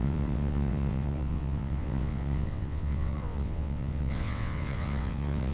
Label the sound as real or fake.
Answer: fake